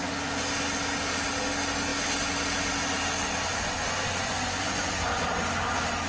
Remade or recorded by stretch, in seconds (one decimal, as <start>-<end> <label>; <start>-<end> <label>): 0.0-3.5 recorded; 3.5-5.2 remade; 5.2-6.1 recorded